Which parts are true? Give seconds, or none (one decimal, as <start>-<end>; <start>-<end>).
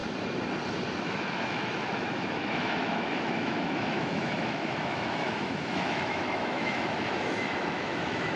0.0-1.0